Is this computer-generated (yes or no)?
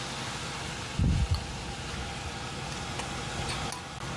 no